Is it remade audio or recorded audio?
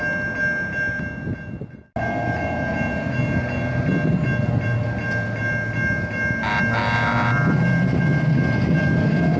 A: recorded